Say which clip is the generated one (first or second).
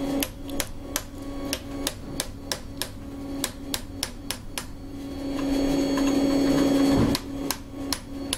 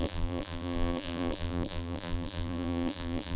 second